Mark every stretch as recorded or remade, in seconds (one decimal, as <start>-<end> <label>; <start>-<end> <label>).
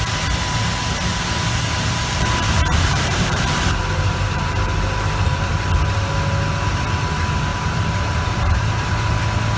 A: 0.0-1.1 recorded; 1.1-5.5 remade; 5.5-7.5 recorded; 7.5-8.8 remade; 8.8-9.6 recorded